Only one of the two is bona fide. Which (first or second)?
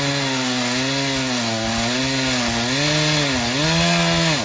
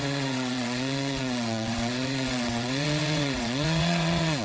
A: first